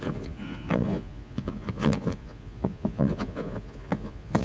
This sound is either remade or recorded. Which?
remade